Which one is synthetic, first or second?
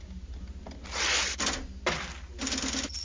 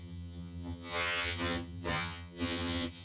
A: second